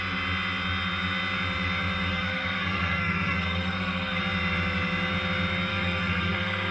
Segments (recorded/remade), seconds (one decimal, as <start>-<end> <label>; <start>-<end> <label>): 0.0-2.1 recorded; 2.1-4.2 remade; 4.2-5.7 recorded; 5.7-6.7 remade